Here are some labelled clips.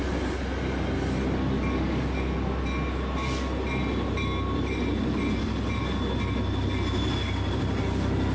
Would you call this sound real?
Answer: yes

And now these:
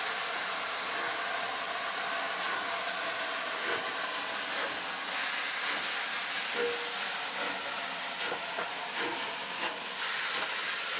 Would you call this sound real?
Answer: yes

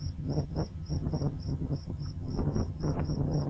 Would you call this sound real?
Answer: no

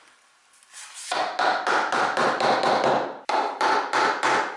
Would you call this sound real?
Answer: yes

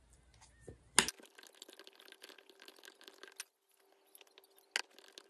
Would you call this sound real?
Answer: yes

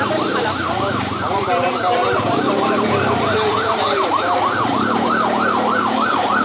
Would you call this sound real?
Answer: no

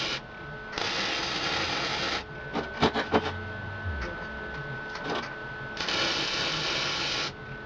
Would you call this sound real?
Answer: yes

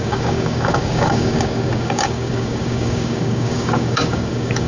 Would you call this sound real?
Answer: no